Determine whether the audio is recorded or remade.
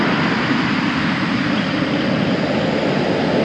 recorded